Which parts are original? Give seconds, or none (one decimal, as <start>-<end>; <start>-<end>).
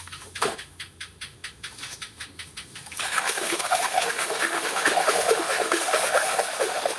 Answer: none